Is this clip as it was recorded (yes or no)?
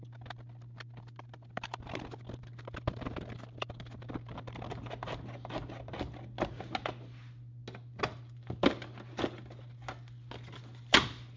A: yes